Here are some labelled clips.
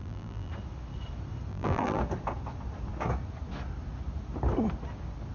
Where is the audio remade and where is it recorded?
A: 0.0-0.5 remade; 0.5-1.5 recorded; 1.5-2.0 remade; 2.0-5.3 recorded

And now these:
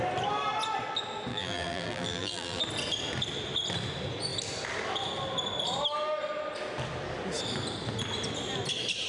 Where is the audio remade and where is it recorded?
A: 0.0-1.3 recorded; 1.3-2.6 remade; 2.6-9.1 recorded

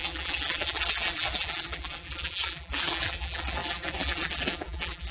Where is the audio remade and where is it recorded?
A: 0.0-5.1 remade